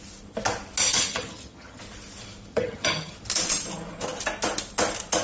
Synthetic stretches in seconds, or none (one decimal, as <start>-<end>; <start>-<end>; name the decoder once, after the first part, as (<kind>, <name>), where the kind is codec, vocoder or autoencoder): 0.9-1.8 (vocoder, HiFi-GAN); 2.5-3.1